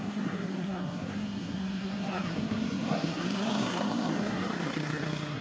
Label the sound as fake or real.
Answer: fake